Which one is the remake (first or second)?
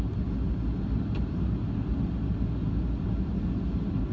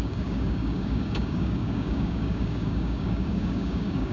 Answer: second